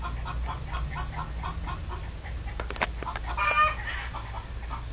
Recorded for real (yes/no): yes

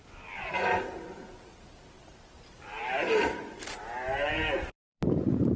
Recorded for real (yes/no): no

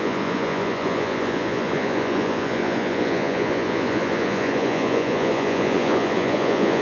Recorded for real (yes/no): no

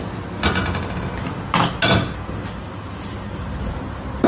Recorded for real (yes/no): yes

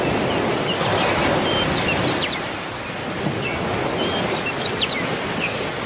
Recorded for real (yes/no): yes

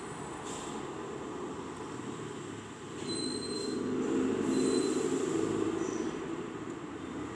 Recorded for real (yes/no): yes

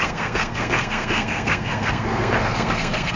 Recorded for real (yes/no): no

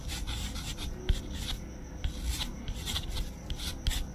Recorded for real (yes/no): yes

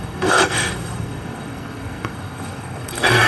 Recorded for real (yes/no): no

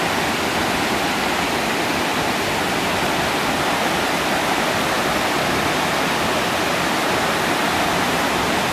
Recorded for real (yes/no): yes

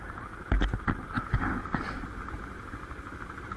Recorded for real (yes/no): yes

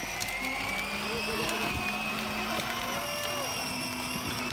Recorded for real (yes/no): yes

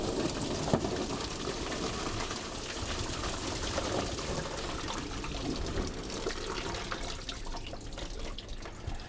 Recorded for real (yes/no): yes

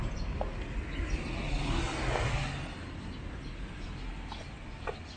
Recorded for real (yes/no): yes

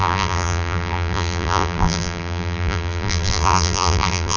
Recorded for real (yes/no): no